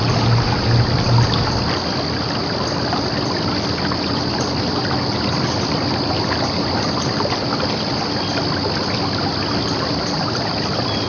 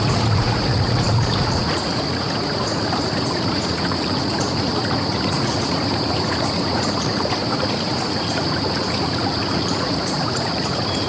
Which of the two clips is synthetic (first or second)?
second